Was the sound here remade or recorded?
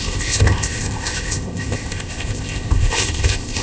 remade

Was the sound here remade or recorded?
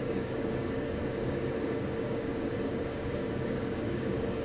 remade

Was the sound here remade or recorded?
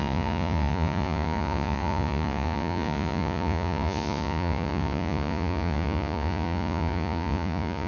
remade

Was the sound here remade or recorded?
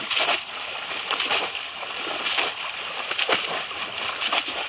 remade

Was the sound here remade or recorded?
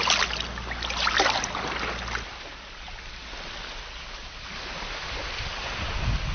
recorded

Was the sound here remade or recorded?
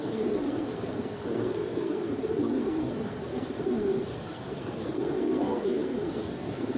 remade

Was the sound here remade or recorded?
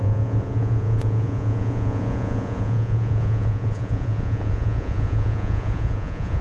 remade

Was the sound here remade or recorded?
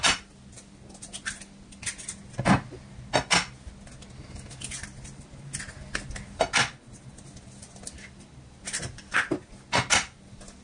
recorded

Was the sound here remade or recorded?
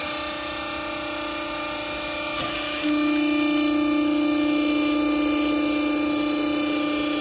recorded